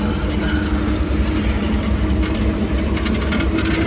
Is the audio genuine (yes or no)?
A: yes